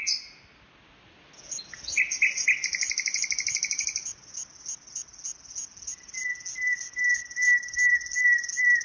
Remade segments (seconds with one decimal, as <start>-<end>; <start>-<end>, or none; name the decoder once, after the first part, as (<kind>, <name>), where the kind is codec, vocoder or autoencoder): none